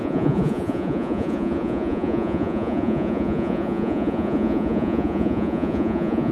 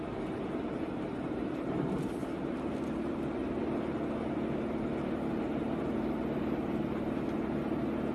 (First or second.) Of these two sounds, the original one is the second